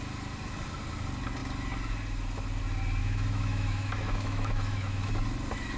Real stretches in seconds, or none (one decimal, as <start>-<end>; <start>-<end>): 0.0-3.0; 5.1-5.8